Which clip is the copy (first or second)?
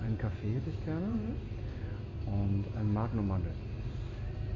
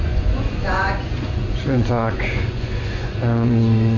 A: second